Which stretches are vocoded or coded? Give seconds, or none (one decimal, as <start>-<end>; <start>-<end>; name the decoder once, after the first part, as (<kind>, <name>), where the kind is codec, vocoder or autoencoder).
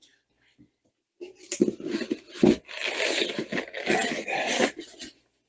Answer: none